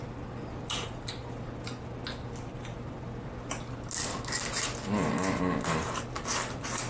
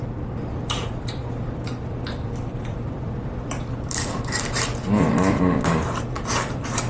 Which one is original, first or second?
first